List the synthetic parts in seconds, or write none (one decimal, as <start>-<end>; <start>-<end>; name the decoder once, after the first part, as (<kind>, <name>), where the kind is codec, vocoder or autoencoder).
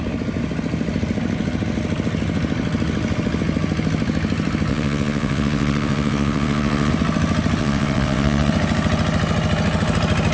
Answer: 4.7-6.9 (vocoder, WaveNeXt); 7.6-8.5